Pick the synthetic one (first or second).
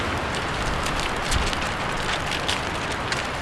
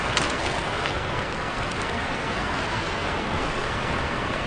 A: second